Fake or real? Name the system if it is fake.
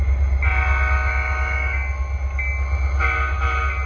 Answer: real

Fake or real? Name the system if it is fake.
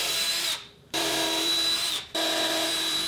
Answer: fake, vocoder, BigVGAN v2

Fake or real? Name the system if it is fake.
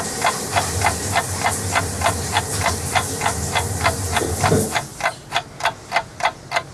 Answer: real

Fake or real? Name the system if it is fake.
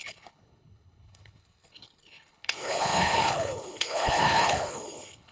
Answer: fake, codec, HILCodec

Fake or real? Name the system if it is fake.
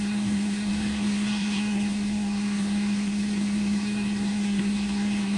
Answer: fake, codec, SNAC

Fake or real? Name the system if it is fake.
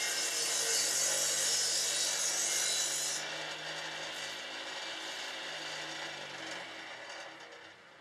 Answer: real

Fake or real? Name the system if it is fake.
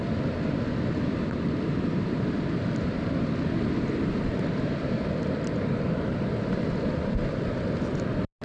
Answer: real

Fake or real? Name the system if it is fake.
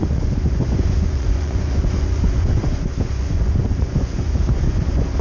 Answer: fake, vocoder, Vocos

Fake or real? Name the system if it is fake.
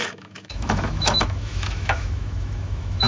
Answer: fake, autoencoder, DAC-VAE